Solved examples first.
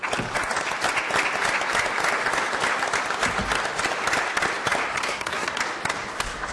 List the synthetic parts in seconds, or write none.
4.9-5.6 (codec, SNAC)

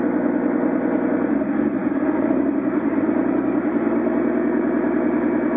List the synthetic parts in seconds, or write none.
none

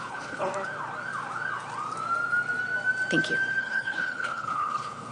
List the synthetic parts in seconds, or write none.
0.0-0.5 (codec, HILCodec); 3.6-5.1

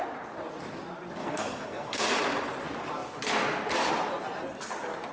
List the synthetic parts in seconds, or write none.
1.2-2.0 (codec, SNAC)

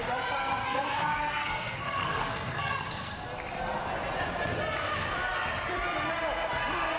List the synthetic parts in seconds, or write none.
0.4-3.1 (codec, SNAC)

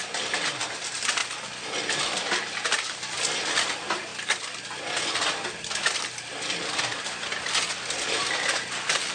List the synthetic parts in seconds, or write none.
0.0-1.2 (vocoder, BigVGAN v2); 2.0-4.1; 6.3-6.9; 8.0-9.1

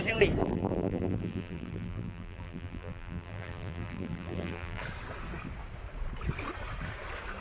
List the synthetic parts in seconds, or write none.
0.4-4.8 (vocoder, BigVGAN v2)

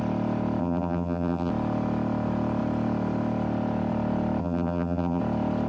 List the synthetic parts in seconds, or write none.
0.6-1.5 (vocoder, BigVGAN v2); 4.4-5.2